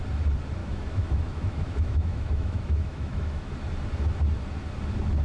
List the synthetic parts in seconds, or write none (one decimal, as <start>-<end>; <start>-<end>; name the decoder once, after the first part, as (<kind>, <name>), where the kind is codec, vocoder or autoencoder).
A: 0.6-3.5 (autoencoder, DAC-VAE)